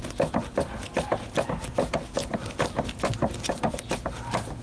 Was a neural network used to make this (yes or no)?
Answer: no